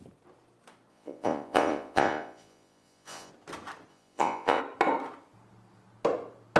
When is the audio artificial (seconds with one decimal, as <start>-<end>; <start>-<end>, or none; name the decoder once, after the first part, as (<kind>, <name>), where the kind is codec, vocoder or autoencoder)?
0.9-3.3 (vocoder, Vocos); 3.9-4.6